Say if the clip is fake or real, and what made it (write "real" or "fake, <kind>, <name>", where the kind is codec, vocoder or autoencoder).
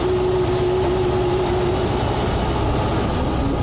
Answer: real